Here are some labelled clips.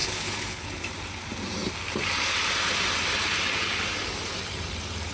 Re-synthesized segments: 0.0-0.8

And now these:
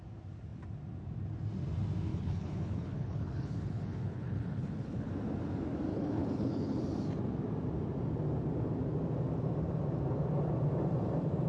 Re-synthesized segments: 2.1-5.1; 5.9-6.8

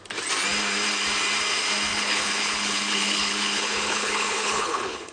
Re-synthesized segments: 1.9-5.1

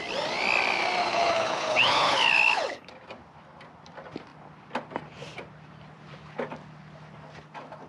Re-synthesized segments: 1.0-2.9